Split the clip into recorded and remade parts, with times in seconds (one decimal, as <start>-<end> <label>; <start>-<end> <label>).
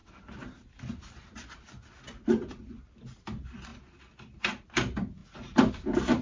0.0-6.2 recorded